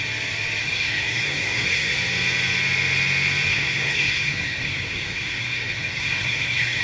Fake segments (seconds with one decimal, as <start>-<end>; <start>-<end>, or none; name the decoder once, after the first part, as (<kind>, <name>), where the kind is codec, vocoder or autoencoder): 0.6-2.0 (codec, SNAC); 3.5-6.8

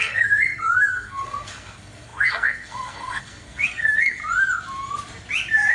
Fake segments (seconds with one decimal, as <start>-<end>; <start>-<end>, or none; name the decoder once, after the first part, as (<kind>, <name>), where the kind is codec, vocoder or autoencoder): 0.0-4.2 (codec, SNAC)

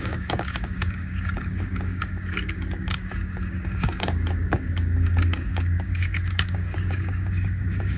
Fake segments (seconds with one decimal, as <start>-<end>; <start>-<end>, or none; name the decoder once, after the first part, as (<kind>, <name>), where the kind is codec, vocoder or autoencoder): 0.0-8.0 (codec, DAC)